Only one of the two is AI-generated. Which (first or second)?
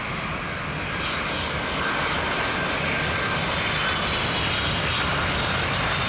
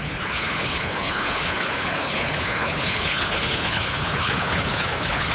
second